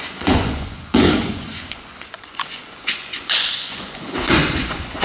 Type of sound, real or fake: fake